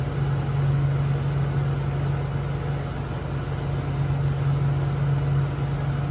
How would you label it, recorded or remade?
recorded